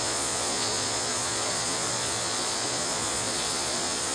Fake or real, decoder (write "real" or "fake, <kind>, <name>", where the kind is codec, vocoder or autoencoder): fake, vocoder, Vocos